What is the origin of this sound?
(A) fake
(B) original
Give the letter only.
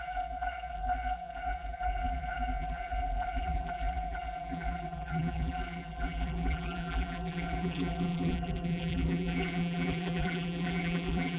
A